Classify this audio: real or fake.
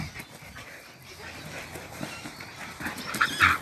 real